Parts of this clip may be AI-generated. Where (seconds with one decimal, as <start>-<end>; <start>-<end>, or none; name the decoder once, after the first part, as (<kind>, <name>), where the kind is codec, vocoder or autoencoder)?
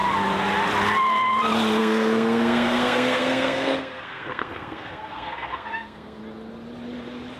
1.8-6.2 (codec, SNAC)